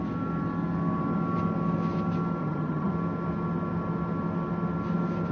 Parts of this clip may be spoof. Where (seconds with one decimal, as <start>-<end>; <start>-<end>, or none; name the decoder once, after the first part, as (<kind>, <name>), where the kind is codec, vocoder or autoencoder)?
2.4-2.9 (vocoder, HiFi-GAN)